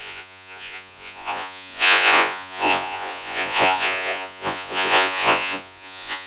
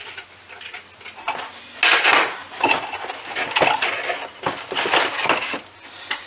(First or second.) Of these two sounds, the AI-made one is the first